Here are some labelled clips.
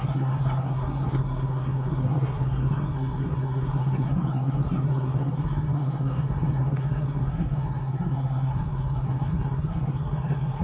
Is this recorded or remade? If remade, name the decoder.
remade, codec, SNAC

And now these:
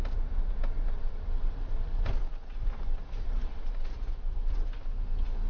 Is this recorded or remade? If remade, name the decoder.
recorded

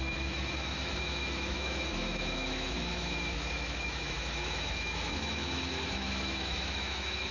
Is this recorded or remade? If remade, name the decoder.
remade, autoencoder, DAC-VAE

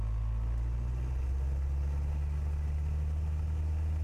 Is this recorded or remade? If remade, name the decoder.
recorded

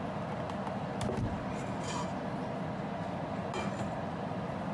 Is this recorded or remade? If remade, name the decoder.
recorded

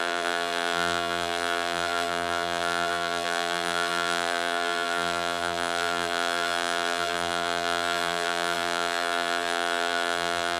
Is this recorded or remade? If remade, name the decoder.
remade, vocoder, BigVGAN v2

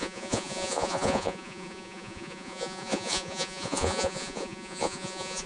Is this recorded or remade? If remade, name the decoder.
remade, vocoder, Vocos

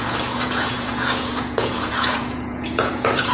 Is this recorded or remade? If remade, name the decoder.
remade, vocoder, Vocos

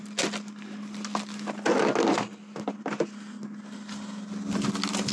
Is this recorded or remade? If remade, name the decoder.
recorded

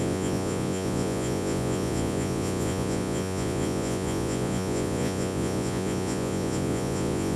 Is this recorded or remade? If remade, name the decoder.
remade, vocoder, Vocos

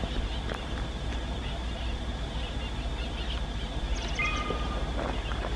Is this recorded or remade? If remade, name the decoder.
recorded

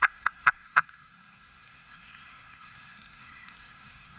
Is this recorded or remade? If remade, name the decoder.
remade, codec, SNAC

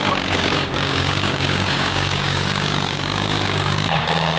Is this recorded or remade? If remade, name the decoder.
remade, codec, DAC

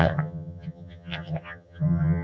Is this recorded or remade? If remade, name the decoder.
remade, vocoder, HiFi-GAN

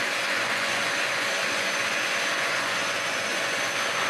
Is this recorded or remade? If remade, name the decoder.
remade, vocoder, Vocos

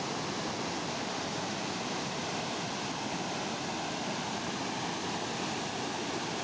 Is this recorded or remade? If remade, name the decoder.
recorded